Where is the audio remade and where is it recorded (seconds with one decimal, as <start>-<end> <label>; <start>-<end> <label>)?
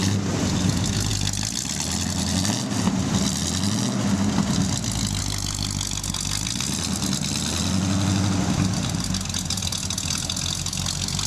0.0-11.3 recorded